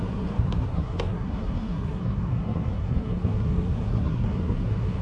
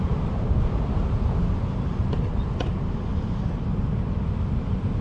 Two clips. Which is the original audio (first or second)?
second